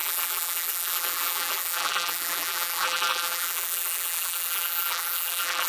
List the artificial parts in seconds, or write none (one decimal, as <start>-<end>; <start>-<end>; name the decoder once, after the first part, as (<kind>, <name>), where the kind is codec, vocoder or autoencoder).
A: 0.0-5.7 (vocoder, BigVGAN v2)